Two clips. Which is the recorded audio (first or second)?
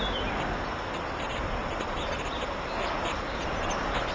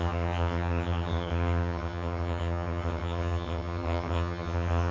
first